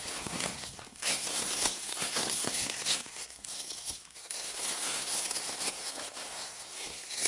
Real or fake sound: fake